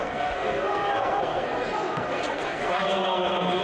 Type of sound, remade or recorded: remade